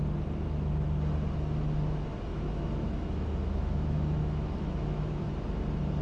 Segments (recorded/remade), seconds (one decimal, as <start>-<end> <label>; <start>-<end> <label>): 0.0-2.3 recorded; 2.3-5.3 remade; 5.3-6.0 recorded